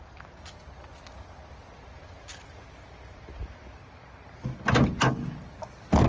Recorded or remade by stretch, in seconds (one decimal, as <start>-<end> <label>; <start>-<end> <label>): 0.0-6.1 recorded